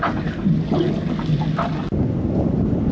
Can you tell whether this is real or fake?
real